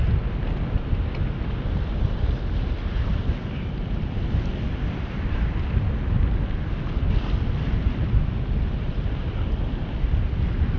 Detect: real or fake real